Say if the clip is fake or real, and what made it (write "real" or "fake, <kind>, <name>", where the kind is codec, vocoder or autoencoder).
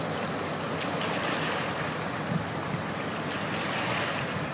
real